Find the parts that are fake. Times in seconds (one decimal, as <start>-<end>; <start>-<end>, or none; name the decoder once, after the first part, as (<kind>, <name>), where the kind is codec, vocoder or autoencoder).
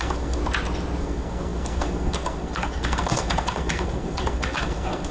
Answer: 0.0-0.4 (codec, SNAC); 1.0-5.1